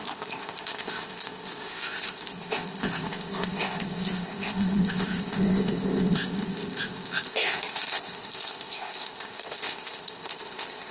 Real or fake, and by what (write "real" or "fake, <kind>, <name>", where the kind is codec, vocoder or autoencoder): fake, codec, ZipCodec